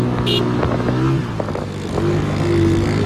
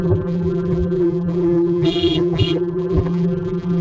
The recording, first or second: first